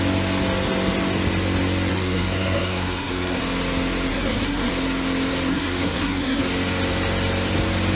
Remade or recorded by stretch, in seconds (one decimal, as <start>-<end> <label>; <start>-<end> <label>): 0.0-1.9 recorded; 1.9-3.4 remade; 3.4-4.1 recorded; 4.1-4.7 remade; 4.7-5.5 recorded; 5.5-6.4 remade; 6.4-7.9 recorded